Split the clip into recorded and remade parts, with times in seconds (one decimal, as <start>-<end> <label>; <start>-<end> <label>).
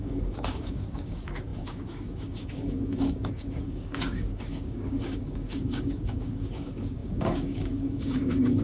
0.0-8.6 remade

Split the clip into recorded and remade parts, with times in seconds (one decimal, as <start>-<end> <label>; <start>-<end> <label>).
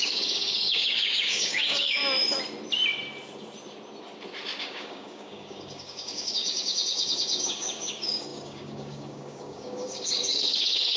0.0-2.0 remade; 2.0-4.6 recorded; 4.6-11.0 remade